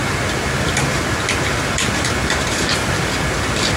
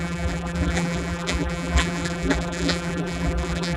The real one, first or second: first